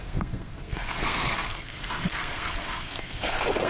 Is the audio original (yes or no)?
no